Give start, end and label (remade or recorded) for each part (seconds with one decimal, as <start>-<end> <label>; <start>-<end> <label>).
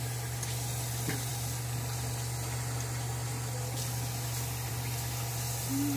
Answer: 0.0-6.0 recorded